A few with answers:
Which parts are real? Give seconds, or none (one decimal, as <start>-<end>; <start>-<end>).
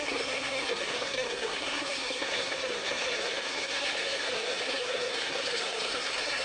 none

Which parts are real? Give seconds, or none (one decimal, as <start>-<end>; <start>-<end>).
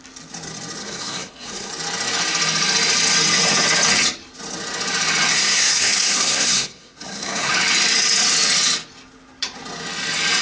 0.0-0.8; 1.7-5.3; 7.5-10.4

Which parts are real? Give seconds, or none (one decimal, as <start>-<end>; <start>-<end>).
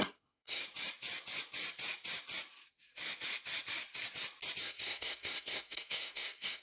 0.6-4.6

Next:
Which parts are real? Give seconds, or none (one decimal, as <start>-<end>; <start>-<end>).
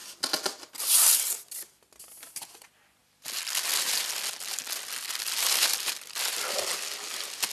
0.0-7.5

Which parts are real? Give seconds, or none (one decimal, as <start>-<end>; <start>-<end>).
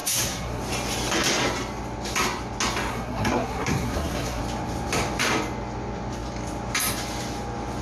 0.6-2.9; 4.4-7.8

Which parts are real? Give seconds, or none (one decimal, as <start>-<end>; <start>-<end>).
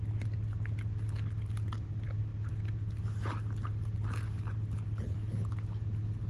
0.0-6.3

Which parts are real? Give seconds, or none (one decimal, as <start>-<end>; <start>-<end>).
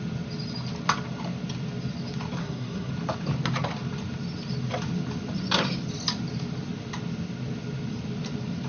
0.0-2.4; 2.9-8.7